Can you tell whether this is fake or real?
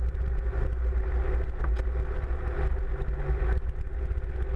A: real